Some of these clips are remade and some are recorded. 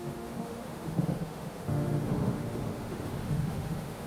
remade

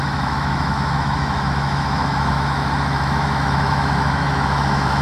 remade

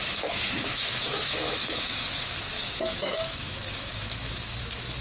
remade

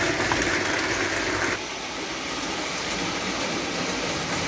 recorded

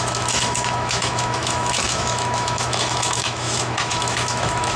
remade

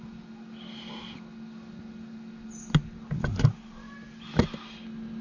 recorded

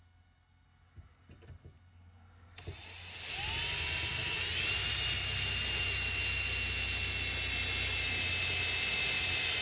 recorded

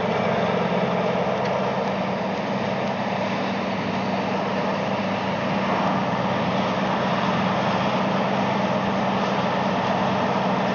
recorded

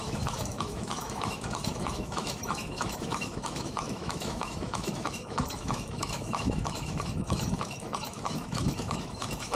remade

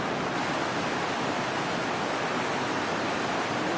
recorded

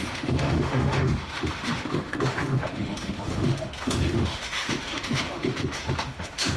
remade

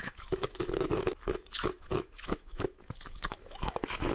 remade